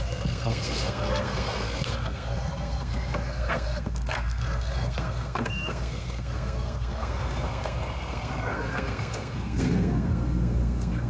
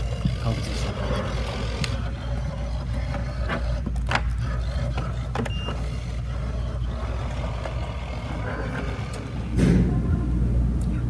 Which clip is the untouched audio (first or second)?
second